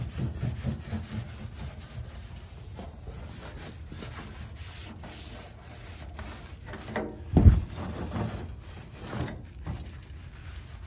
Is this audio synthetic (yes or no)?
no